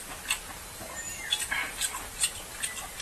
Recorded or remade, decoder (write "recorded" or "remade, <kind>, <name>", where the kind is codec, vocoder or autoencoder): recorded